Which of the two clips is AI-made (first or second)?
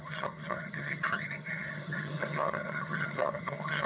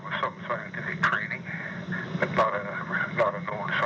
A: first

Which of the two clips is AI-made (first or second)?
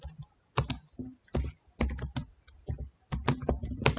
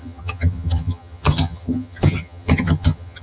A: second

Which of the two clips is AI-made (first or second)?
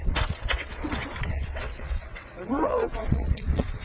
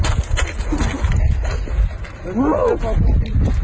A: first